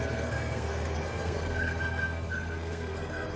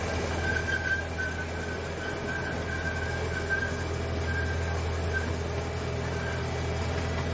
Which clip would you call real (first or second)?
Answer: second